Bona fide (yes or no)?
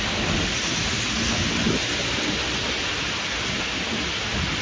yes